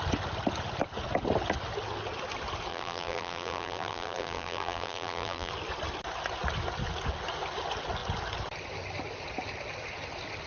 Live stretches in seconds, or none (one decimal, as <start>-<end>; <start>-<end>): 0.0-2.7; 5.5-10.5